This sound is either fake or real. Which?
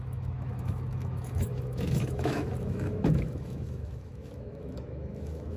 fake